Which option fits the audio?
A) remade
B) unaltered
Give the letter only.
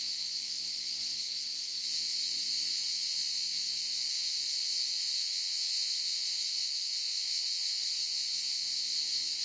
A